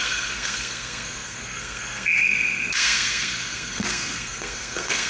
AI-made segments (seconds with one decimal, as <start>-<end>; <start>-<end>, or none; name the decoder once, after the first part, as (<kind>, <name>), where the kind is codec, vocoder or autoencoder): 0.0-5.1 (codec, SNAC)